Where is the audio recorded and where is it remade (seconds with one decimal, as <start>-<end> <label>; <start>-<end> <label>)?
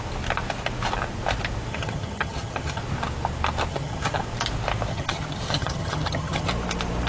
0.0-1.7 recorded; 1.7-2.8 remade; 2.8-3.7 recorded; 3.7-4.2 remade; 4.2-4.9 recorded; 4.9-6.5 remade; 6.5-7.1 recorded